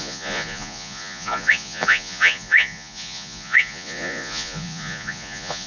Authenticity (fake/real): fake